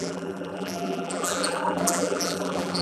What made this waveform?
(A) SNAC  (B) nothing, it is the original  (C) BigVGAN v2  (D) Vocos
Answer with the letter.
C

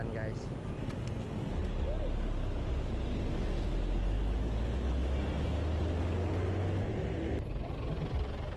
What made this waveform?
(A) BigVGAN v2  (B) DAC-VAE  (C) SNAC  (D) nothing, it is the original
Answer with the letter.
D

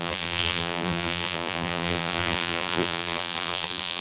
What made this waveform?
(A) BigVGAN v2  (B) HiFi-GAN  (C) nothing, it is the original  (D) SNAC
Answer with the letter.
A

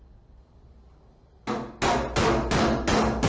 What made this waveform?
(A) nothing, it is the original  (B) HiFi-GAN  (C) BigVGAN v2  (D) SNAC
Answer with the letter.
A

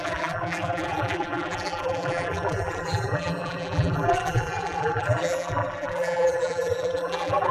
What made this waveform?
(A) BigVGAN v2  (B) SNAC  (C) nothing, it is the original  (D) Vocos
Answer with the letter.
A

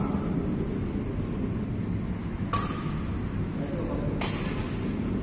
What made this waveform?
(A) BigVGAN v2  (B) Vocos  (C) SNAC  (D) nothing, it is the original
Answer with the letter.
D